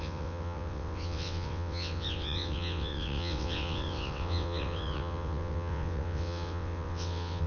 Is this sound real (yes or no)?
no